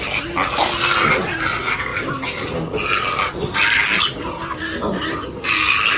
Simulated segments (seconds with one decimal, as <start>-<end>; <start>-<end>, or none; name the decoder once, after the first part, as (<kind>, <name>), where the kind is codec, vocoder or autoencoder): none